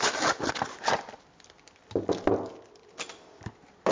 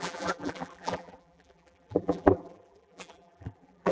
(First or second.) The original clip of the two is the first